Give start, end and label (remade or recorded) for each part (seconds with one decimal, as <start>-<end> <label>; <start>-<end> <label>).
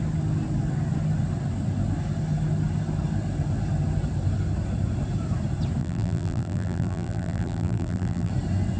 0.0-5.8 recorded; 5.8-8.3 remade; 8.3-8.8 recorded